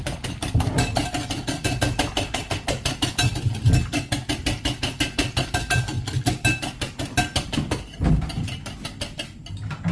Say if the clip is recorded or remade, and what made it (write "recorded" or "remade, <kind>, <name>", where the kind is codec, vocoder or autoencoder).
recorded